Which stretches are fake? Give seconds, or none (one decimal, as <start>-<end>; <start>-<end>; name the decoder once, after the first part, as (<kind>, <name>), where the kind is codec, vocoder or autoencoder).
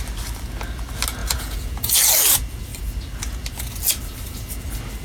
1.2-1.9 (vocoder, Vocos)